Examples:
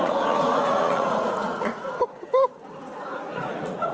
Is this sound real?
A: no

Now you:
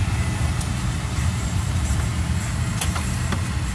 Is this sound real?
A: yes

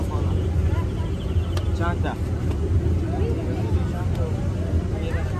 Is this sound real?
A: yes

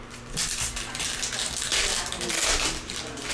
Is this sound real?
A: yes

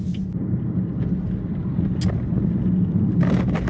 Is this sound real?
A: yes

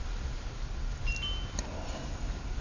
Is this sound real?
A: yes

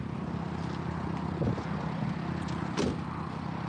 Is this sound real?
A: yes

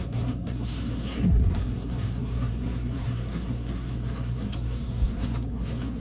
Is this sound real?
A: no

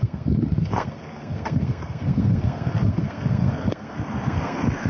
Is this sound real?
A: no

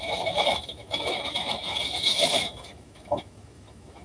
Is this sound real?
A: no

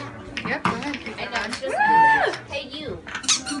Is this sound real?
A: yes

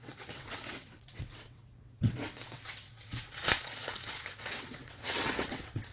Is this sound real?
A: no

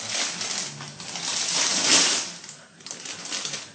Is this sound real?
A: yes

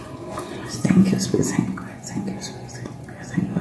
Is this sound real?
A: no